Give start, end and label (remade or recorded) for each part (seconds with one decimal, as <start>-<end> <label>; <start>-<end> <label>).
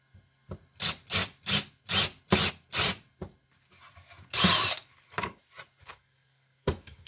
0.0-5.8 recorded; 5.8-7.1 remade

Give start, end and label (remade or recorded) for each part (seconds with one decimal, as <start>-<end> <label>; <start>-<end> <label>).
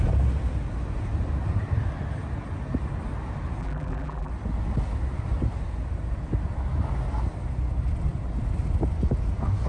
0.0-3.6 recorded; 3.6-4.3 remade; 4.3-9.7 recorded